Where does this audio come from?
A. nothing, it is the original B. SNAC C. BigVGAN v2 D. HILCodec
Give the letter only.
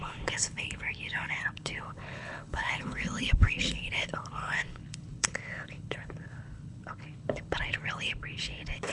D